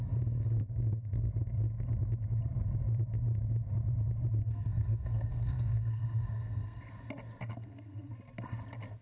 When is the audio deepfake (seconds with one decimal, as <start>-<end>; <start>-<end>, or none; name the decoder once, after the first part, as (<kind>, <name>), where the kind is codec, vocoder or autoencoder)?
4.4-6.8 (codec, SNAC); 7.5-8.1